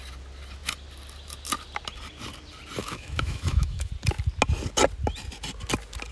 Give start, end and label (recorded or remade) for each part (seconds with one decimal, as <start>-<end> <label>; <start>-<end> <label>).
0.0-2.8 recorded; 2.8-3.9 remade; 3.9-6.1 recorded